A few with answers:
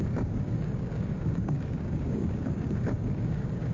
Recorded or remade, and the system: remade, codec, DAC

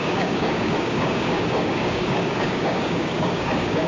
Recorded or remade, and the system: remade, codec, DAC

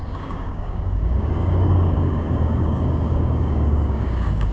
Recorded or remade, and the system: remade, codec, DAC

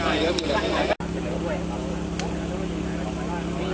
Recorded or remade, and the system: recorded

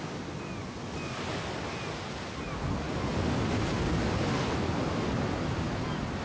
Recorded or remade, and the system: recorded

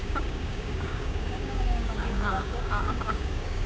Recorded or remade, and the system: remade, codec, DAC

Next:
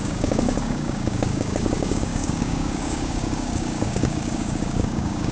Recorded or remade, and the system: remade, codec, DAC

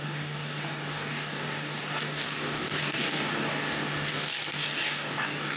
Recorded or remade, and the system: remade, codec, DAC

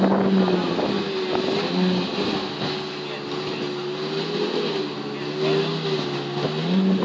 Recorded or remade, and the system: recorded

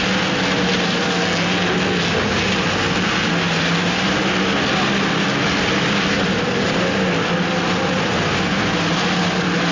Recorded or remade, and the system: recorded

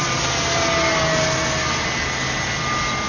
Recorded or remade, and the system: recorded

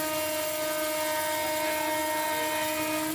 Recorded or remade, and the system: recorded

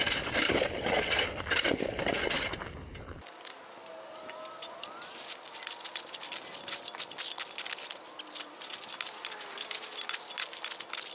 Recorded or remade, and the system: recorded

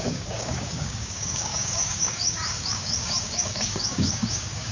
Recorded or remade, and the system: remade, codec, DAC